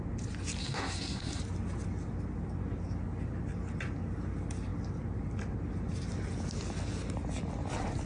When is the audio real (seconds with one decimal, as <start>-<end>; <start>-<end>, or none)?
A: 0.0-0.6; 1.4-8.1